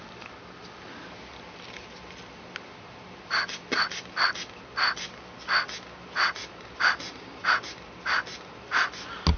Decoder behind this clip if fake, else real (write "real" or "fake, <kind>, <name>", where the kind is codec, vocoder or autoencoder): real